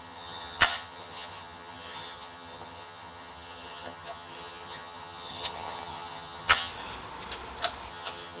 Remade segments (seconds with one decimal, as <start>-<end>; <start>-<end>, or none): 0.0-6.7; 7.9-8.4